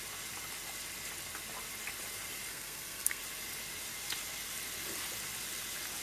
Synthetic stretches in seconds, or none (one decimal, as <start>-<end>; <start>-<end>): 2.5-3.2